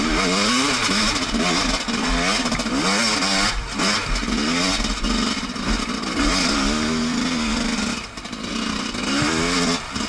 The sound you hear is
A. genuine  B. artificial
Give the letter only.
A